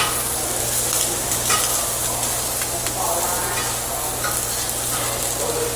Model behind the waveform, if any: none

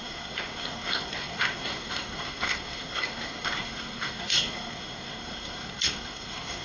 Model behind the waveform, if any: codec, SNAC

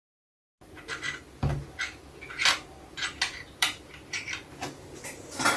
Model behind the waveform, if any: none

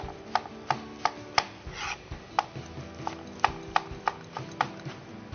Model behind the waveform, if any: none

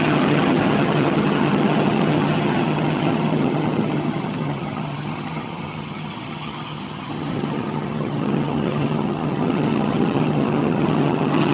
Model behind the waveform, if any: vocoder, HiFi-GAN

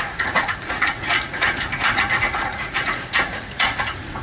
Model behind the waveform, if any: vocoder, Vocos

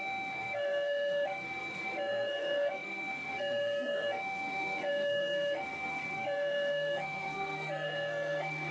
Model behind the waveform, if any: codec, SNAC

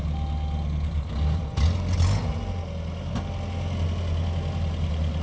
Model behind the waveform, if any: none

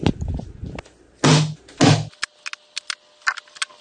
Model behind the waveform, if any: none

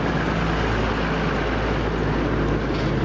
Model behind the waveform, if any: none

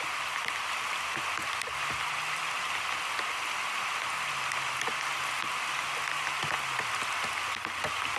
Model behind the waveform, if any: none